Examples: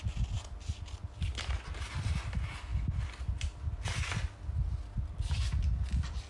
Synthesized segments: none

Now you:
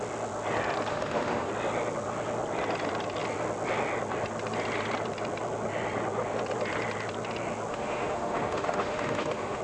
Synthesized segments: 0.9-1.5 (autoencoder, DAC-VAE); 7.7-9.6

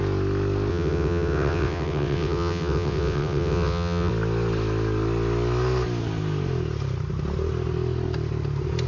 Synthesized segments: 0.7-4.1 (vocoder, WaveNeXt)

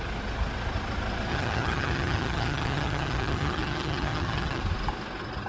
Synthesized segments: 1.3-4.6 (vocoder, HiFi-GAN)

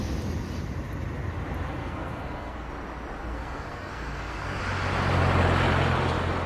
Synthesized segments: 1.8-2.7 (codec, SNAC); 3.2-4.6

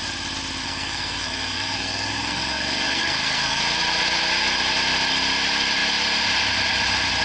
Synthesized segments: 0.6-3.6 (codec, SNAC)

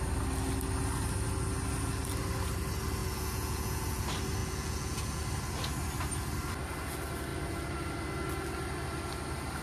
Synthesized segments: 3.0-4.0 (vocoder, Vocos); 4.4-5.2

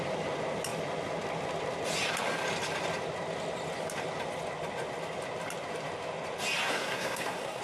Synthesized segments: 6.7-7.6 (codec, SNAC)